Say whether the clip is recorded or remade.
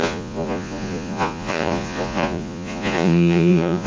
remade